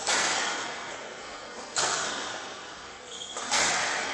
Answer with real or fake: fake